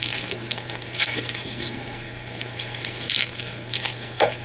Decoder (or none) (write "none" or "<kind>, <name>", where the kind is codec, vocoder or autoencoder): codec, SNAC